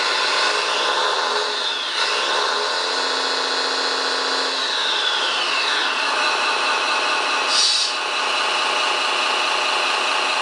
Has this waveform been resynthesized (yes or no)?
no